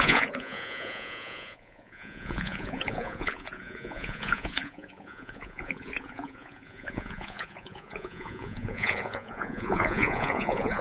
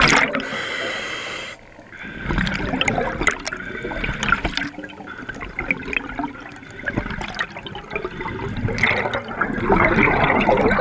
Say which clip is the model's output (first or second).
first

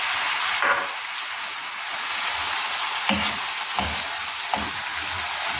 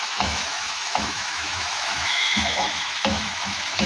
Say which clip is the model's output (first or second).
second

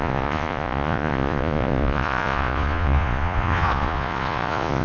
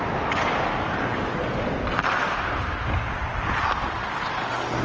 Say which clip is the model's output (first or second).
first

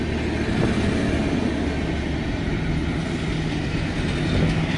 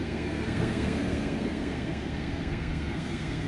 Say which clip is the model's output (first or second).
second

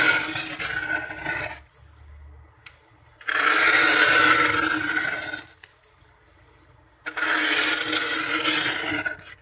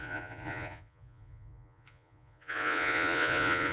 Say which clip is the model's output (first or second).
second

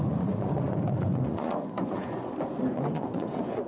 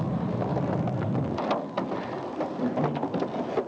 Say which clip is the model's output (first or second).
first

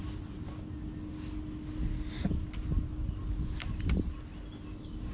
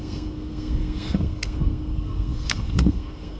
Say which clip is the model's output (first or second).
second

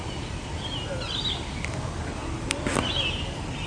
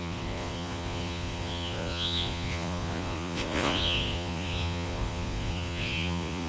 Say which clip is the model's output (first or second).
second